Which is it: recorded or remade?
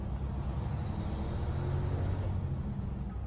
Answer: recorded